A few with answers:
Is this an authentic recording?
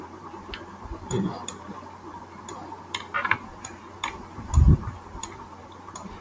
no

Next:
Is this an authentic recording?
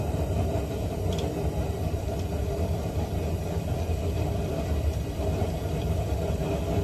no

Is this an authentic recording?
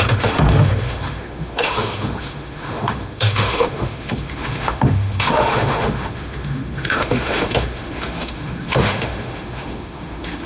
no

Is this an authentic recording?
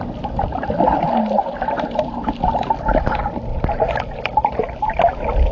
yes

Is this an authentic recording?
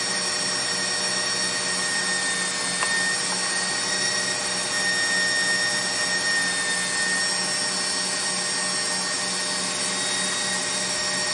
yes